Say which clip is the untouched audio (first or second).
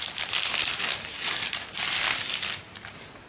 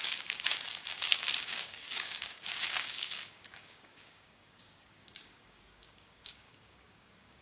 first